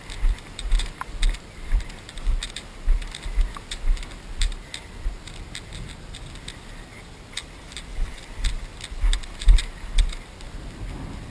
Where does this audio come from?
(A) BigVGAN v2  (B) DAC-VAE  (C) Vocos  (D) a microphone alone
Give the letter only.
D